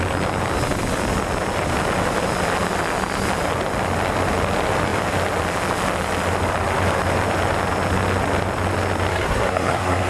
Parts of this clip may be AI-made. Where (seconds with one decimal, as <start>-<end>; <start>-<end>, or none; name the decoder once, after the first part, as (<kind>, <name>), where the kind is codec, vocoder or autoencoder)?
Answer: 9.1-10.1 (codec, SNAC)